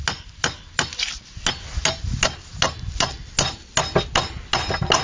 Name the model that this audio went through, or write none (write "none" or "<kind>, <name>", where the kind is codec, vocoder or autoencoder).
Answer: none